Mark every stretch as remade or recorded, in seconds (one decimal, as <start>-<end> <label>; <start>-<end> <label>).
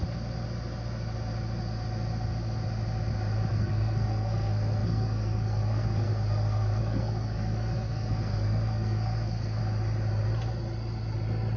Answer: 0.0-3.5 recorded; 3.5-9.6 remade; 9.6-11.6 recorded